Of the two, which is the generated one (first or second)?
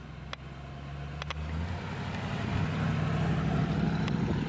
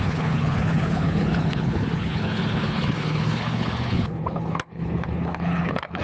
second